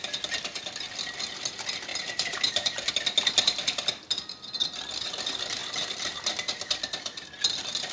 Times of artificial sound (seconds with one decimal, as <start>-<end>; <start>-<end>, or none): 1.9-2.9